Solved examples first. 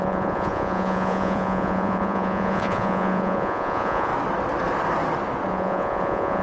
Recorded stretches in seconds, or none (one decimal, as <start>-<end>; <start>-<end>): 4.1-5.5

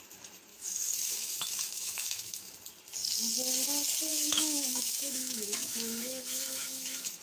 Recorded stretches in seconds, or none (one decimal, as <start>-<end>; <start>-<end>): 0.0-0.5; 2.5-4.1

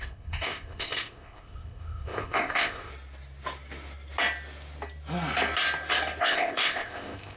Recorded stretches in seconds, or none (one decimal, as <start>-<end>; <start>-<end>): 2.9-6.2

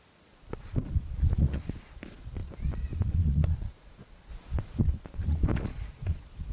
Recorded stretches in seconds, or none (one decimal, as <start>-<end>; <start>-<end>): none

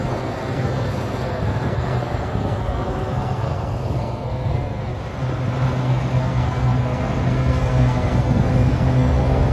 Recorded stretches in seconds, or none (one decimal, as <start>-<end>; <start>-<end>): 4.9-5.8

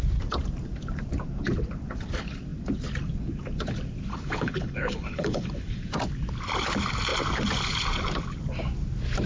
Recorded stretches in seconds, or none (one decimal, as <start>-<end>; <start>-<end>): 0.0-4.1; 5.8-9.3